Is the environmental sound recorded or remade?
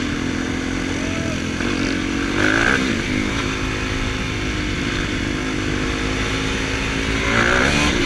recorded